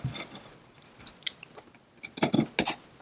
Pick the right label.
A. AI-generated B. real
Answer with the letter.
B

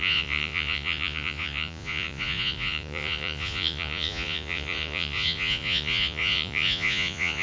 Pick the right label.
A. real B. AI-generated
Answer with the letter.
B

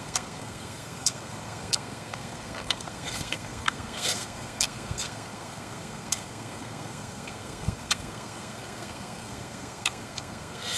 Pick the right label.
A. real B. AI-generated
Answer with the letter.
B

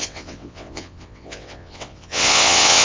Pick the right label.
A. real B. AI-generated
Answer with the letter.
B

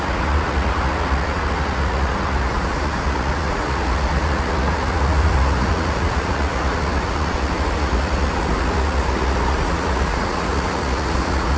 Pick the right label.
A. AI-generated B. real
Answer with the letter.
A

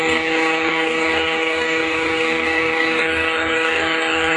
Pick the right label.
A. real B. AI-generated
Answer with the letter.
B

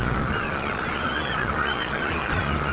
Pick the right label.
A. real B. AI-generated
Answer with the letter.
B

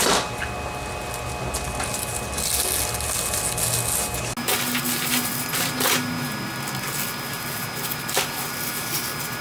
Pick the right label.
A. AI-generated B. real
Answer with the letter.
B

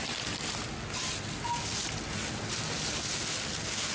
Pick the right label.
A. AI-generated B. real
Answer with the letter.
B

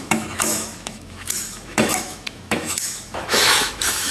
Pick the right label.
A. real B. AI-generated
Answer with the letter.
B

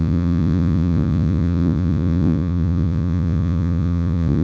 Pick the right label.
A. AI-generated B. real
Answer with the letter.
A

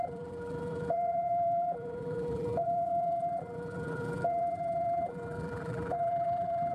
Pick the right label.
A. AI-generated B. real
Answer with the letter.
A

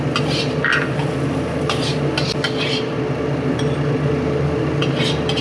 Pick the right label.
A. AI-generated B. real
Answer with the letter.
B